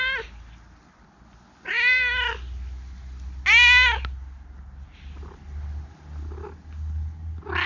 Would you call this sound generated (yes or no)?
no